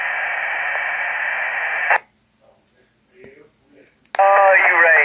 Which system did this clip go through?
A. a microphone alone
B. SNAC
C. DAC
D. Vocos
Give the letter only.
A